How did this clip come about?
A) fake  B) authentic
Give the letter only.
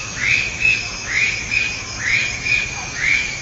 A